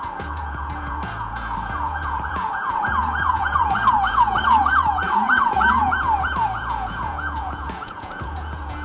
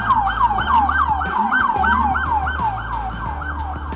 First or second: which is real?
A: second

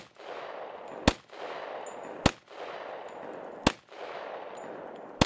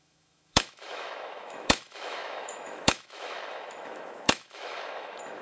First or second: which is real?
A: first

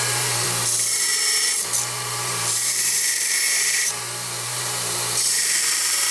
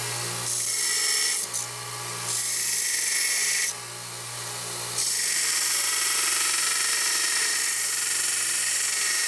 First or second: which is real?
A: second